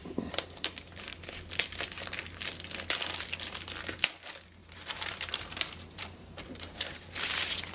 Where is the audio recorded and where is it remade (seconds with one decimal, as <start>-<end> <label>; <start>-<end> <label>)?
0.0-4.6 recorded; 4.6-7.2 remade; 7.2-7.7 recorded